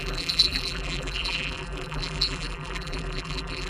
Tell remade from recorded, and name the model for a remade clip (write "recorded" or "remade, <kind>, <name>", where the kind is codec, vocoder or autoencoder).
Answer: remade, vocoder, BigVGAN v2